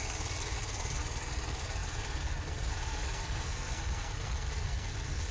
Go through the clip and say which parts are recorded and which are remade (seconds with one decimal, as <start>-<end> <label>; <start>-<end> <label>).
0.0-5.3 remade